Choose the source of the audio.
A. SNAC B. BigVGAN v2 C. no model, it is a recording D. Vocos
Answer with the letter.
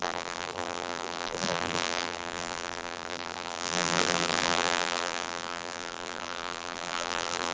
B